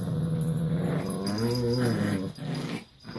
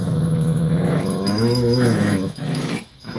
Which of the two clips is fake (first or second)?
second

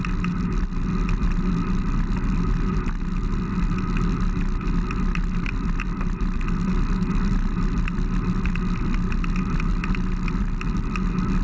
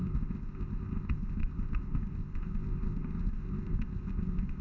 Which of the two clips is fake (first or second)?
second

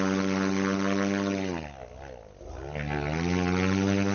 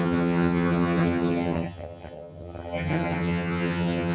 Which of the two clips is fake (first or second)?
second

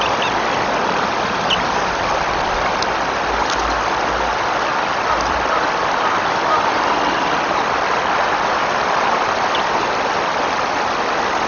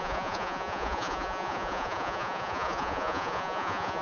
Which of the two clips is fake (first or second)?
second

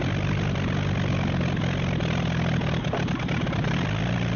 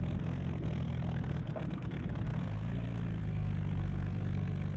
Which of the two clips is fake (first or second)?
second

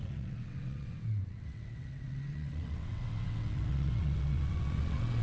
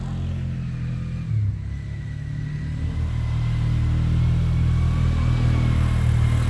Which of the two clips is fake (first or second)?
first